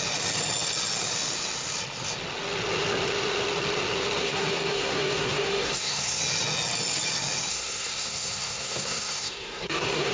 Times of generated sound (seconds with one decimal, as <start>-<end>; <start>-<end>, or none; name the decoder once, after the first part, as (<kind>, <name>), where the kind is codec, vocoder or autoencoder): 4.2-6.2 (codec, SNAC); 7.5-10.1

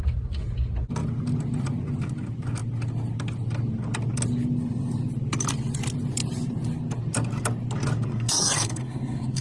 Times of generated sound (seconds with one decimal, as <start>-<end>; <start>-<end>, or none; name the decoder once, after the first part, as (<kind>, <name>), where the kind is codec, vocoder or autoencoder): 8.1-9.4 (codec, SNAC)

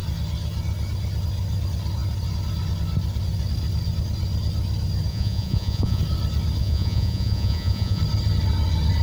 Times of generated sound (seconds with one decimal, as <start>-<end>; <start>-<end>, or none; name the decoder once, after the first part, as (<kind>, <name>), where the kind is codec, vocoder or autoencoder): 5.1-6.0 (vocoder, Vocos); 6.6-8.0

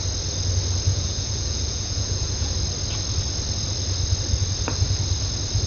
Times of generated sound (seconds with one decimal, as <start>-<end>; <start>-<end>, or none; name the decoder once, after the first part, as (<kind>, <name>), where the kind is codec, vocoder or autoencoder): 0.9-2.5 (vocoder, Vocos)